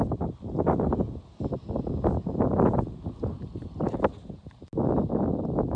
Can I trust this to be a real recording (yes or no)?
yes